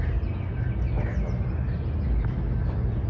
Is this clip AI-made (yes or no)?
no